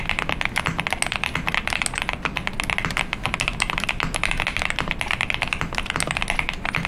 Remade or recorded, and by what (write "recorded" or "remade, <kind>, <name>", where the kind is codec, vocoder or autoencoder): recorded